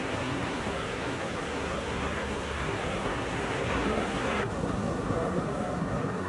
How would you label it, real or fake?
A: fake